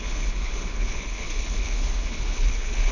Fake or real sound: fake